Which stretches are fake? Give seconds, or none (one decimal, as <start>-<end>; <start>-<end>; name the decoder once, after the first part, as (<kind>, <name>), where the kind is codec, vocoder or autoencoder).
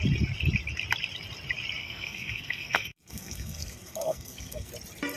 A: 1.8-4.7 (codec, SNAC)